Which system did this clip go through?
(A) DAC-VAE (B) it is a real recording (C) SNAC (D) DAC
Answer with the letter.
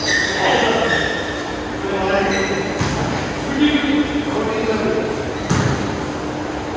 B